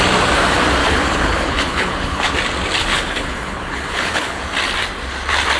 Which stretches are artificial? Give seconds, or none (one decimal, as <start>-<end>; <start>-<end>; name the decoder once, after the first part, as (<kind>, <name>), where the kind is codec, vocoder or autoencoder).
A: 0.8-2.3 (codec, HILCodec); 2.8-4.4